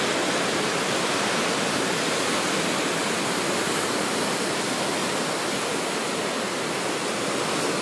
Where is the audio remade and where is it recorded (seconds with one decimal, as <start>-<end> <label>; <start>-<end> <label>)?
0.0-7.8 recorded